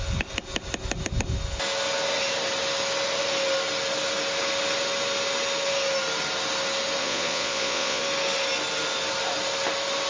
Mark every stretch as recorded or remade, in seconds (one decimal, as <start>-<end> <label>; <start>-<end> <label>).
0.0-7.0 recorded; 7.0-8.0 remade; 8.0-10.1 recorded